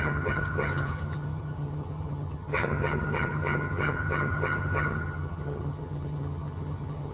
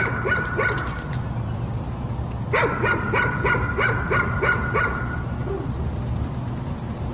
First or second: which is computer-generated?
first